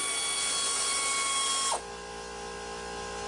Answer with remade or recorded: recorded